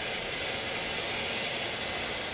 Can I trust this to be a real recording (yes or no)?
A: yes